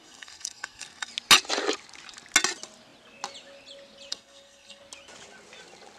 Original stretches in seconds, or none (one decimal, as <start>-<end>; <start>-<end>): 1.1-4.1; 4.8-6.0